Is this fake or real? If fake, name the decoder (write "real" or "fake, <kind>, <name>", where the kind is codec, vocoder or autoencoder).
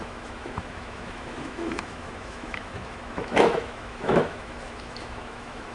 fake, autoencoder, DAC-VAE